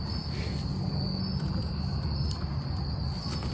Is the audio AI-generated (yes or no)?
no